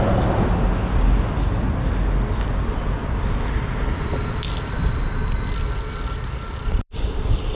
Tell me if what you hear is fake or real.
real